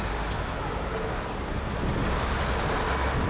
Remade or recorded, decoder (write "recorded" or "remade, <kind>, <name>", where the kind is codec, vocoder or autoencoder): recorded